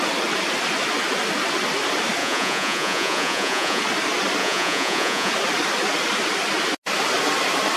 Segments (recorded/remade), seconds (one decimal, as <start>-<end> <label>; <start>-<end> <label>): 0.0-2.2 recorded; 2.2-3.8 remade; 3.8-4.4 recorded; 4.4-5.3 remade; 5.3-7.8 recorded